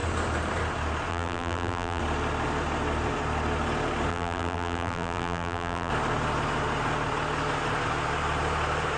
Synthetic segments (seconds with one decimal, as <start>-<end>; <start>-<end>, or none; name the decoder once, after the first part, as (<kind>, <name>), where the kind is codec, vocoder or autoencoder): 1.1-2.0 (vocoder, BigVGAN v2); 4.1-5.9